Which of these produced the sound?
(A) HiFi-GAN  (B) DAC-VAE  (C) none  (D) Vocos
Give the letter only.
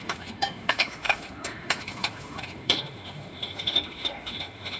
B